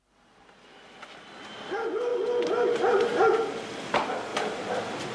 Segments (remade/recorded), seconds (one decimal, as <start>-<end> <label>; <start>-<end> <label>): 0.0-5.1 recorded